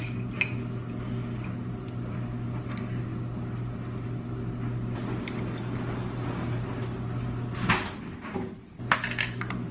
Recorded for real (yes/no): yes